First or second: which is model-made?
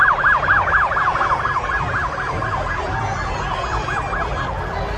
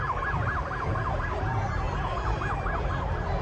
second